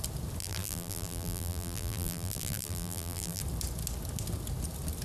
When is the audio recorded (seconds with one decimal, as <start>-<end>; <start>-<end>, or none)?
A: 0.0-0.4; 3.4-5.0